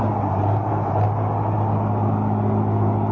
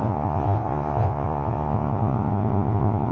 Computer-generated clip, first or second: second